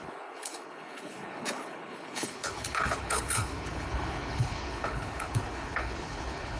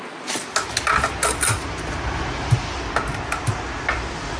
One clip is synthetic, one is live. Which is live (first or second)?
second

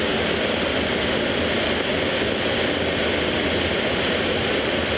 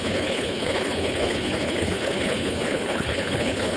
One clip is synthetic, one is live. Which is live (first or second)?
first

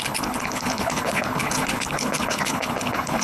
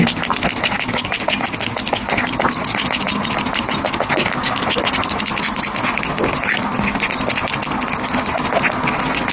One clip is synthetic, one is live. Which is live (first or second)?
second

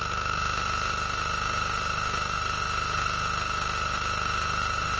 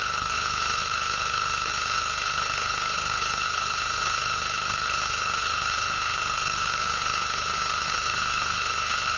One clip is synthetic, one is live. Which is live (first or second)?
first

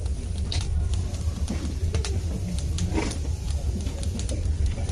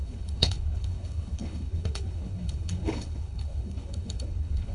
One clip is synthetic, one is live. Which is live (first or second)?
first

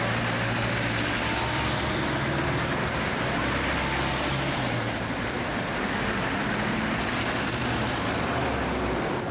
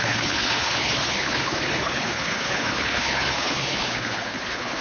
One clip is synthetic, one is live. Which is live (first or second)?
first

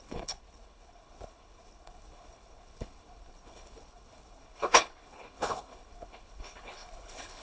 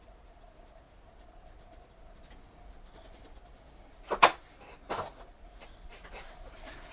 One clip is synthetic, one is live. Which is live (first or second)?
second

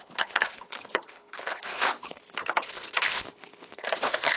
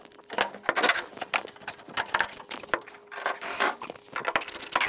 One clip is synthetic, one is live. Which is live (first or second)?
second